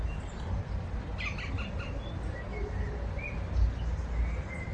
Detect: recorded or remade recorded